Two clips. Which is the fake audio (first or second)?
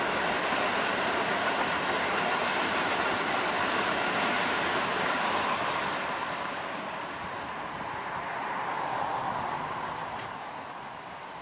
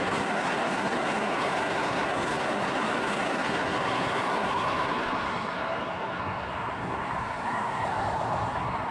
second